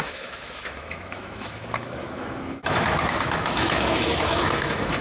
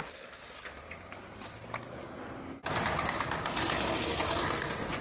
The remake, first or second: first